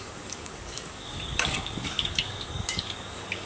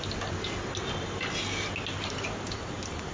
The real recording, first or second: second